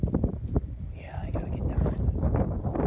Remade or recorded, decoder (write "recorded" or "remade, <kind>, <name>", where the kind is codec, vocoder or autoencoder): recorded